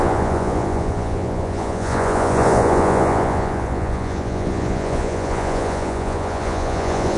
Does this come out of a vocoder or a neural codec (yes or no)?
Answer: yes